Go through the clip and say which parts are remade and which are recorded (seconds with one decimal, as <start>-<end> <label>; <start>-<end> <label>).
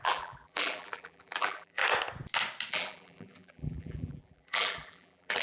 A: 0.0-1.8 remade; 1.8-2.7 recorded; 2.7-5.4 remade